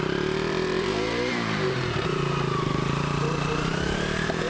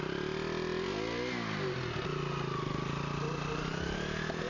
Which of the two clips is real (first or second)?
second